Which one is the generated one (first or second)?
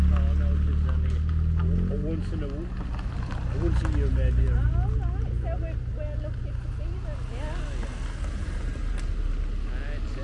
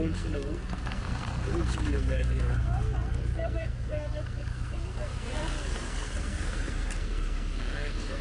second